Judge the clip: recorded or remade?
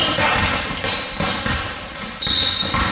recorded